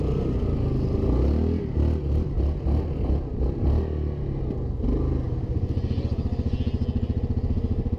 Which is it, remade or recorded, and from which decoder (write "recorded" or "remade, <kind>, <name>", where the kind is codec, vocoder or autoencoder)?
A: recorded